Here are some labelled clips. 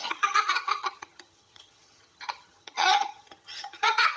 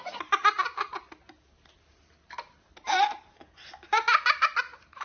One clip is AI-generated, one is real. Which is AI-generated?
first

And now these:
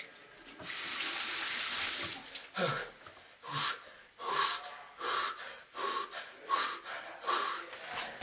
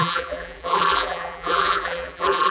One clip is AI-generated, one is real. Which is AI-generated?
second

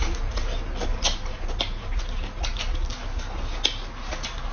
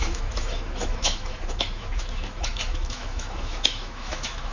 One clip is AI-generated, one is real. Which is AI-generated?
second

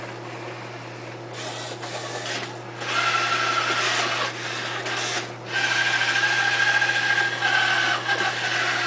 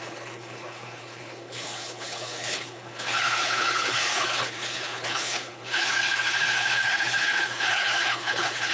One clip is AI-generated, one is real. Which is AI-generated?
second